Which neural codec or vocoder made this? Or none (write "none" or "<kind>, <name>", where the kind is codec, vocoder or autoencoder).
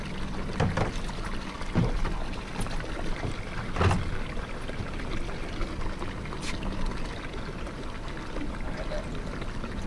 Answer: none